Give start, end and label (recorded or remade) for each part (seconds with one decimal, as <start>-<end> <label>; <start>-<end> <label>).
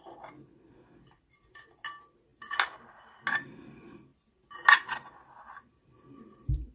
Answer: 0.0-6.7 recorded